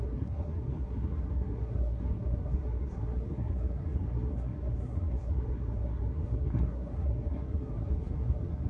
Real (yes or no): no